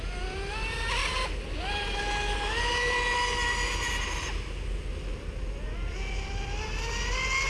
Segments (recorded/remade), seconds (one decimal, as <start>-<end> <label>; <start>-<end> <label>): 0.0-7.5 recorded